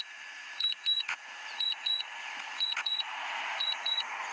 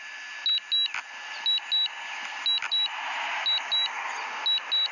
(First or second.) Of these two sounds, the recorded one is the second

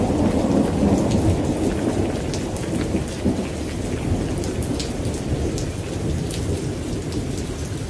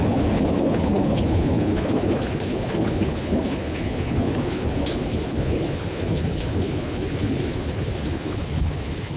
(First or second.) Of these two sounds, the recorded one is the first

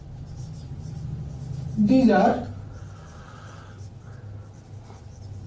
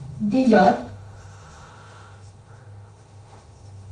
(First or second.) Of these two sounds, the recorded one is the first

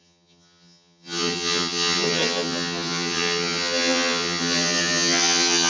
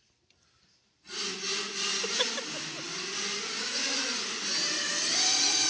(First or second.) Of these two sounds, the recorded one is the second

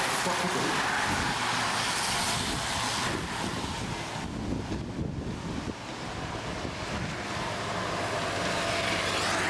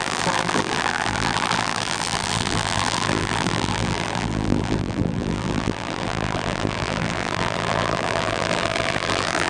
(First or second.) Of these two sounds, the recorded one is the first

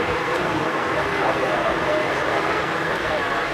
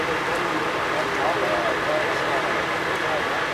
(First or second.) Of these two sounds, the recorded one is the second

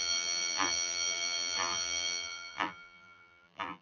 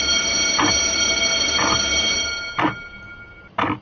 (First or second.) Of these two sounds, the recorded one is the second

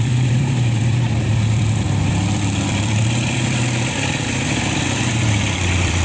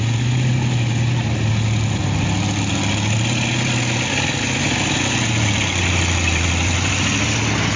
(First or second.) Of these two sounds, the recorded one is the second